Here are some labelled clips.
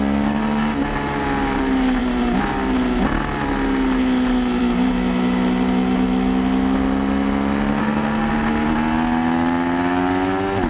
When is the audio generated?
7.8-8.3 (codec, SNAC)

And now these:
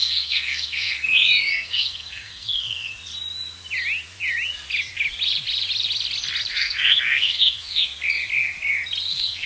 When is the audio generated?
0.0-2.9 (codec, SNAC); 6.5-7.9; 9.1-9.5

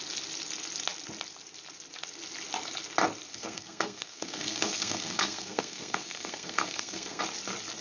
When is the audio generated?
3.3-7.2 (codec, SNAC)

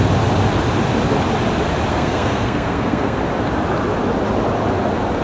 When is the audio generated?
1.9-3.2 (codec, SNAC)

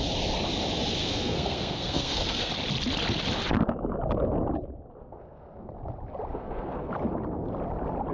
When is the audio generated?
1.0-2.5 (codec, SNAC); 5.0-5.7; 6.3-6.9

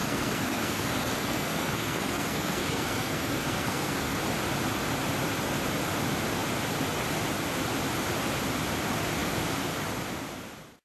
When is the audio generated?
0.0-4.2 (codec, SNAC)

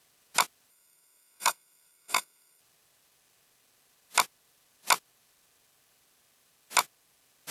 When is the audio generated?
0.7-2.6 (codec, SNAC)

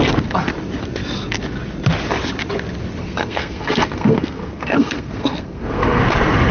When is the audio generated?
3.0-6.0 (codec, SNAC)